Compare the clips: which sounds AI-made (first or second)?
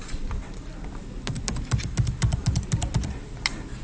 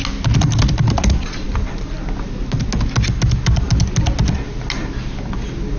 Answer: first